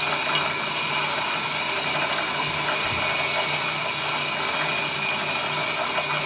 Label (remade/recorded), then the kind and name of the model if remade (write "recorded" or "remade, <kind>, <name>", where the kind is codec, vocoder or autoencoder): recorded